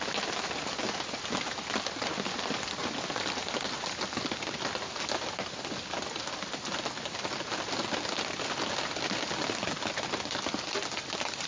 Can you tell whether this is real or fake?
real